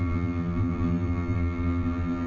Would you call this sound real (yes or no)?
no